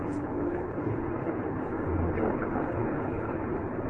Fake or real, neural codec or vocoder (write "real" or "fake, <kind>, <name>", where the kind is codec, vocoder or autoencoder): fake, codec, HILCodec